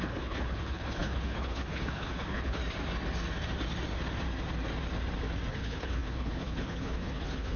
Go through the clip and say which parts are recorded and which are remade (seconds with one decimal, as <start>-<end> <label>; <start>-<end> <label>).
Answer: 0.0-2.6 remade; 2.6-5.5 recorded; 5.5-7.6 remade